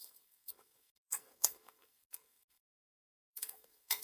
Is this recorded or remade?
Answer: remade